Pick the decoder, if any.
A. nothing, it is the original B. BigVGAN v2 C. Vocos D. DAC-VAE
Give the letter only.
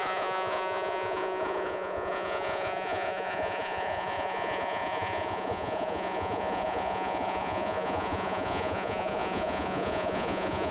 C